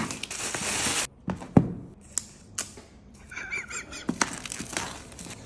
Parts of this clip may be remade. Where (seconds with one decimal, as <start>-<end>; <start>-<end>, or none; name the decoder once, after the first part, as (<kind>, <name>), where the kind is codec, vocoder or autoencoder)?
none

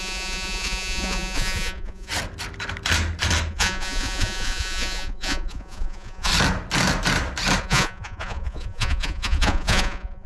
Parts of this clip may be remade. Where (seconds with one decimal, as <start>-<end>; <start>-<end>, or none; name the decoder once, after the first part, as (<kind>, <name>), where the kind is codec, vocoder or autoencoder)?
0.0-2.1 (vocoder, Vocos); 3.5-6.3; 7.6-10.3

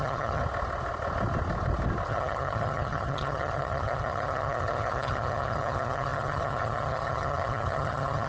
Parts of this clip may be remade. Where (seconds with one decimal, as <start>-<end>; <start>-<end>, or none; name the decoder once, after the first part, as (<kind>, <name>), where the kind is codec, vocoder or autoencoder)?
0.0-0.4 (vocoder, HiFi-GAN); 2.1-8.3

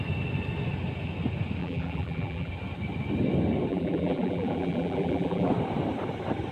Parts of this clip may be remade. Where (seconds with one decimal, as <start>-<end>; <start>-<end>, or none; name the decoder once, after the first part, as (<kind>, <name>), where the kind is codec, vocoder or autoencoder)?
1.6-2.5 (vocoder, BigVGAN v2); 3.7-5.5